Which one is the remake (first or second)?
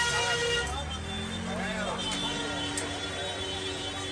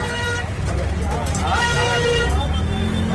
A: second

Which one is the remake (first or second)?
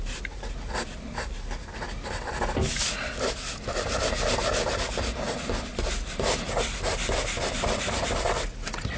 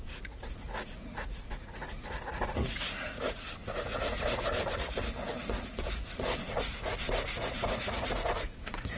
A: second